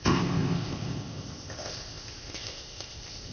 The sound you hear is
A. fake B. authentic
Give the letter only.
A